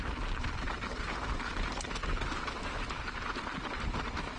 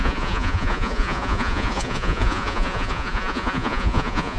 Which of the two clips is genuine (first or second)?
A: first